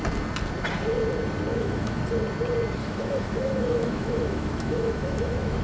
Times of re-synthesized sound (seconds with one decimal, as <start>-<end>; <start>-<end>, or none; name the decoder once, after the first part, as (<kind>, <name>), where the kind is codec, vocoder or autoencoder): 1.5-2.0 (autoencoder, DAC-VAE); 2.8-5.6